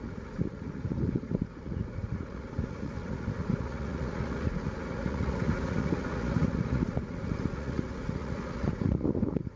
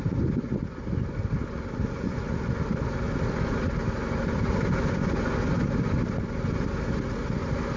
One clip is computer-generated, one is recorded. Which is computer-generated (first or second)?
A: first